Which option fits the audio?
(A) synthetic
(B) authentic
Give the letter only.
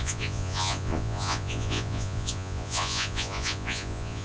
A